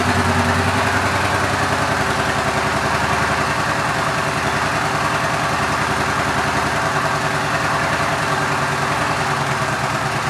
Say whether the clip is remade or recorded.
recorded